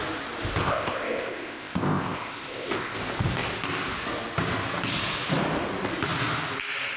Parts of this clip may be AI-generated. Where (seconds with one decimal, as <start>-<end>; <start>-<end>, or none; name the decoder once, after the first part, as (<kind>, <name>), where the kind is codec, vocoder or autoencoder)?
0.6-3.0 (codec, ZipCodec)